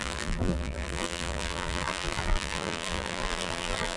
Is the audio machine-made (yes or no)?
yes